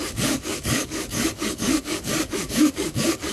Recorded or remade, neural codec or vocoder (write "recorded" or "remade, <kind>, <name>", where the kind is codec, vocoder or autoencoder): remade, codec, DAC